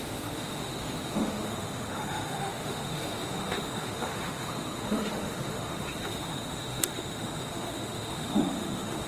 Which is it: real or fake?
fake